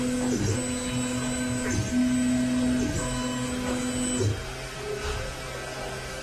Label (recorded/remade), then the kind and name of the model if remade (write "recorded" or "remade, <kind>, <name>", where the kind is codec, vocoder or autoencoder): recorded